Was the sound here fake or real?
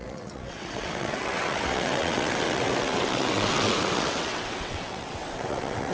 fake